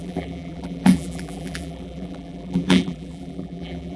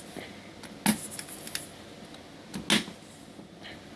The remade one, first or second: first